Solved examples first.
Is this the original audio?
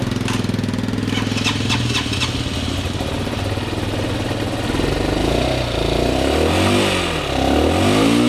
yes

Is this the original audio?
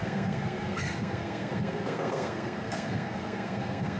no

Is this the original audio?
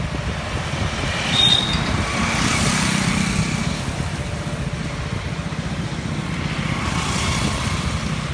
yes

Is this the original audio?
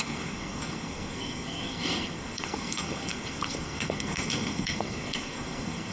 no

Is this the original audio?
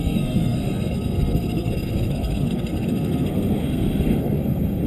no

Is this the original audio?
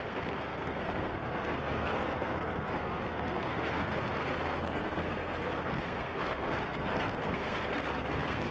no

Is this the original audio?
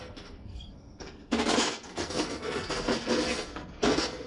no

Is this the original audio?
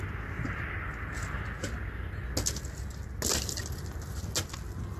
yes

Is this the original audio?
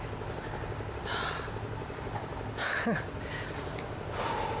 yes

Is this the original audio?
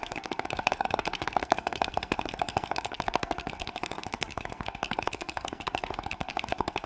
no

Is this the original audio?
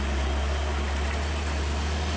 yes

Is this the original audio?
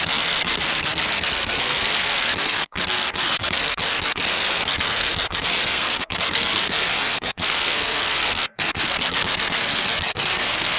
no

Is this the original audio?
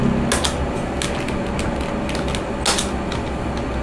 yes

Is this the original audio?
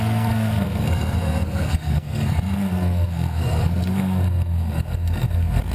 no